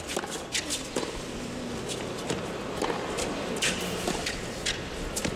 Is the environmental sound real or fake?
real